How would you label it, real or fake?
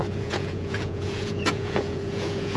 fake